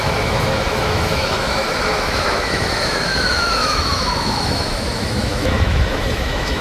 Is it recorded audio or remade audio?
remade